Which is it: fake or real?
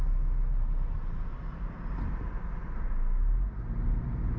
real